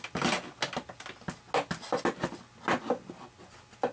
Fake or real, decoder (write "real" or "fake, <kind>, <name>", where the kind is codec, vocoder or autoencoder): real